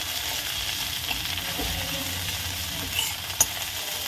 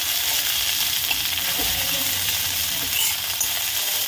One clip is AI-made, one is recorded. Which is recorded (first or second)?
first